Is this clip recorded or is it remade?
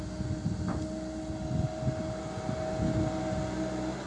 recorded